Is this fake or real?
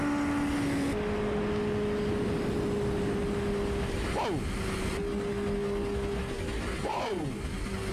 real